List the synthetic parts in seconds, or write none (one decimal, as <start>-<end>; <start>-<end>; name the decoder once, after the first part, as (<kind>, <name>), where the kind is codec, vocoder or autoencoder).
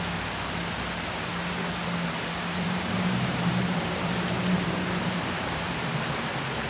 1.8-5.8 (vocoder, BigVGAN v2)